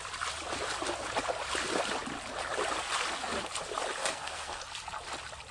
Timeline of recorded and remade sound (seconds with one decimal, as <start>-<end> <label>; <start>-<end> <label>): 0.0-4.0 recorded; 4.0-4.6 remade; 4.6-5.5 recorded